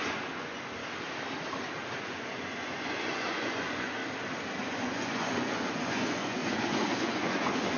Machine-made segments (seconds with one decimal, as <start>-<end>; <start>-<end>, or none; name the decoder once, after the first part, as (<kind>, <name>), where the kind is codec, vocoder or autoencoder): 0.0-0.8 (vocoder, Vocos); 2.0-4.0; 4.7-7.8